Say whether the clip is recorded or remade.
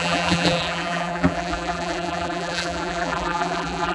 remade